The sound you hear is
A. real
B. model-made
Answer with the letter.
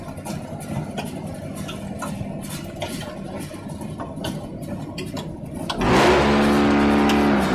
A